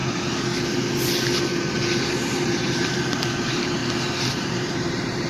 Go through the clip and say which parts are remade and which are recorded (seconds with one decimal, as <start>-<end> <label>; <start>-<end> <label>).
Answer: 0.0-1.4 recorded; 1.4-3.8 remade; 3.8-4.3 recorded; 4.3-5.3 remade